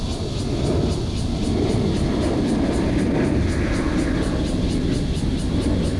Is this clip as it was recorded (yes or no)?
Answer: yes